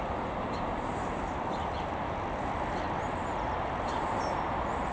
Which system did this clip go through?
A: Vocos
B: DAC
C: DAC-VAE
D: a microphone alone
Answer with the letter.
D